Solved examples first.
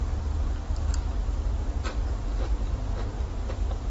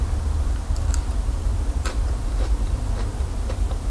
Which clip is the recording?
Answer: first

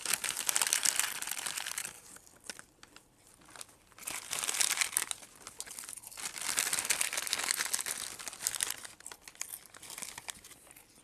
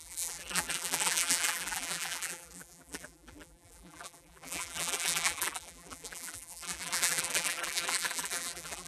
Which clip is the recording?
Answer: first